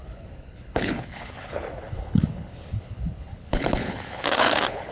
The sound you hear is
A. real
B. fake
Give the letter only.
B